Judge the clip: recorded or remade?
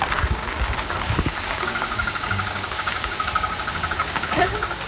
remade